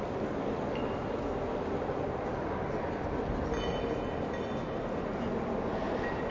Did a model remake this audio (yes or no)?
no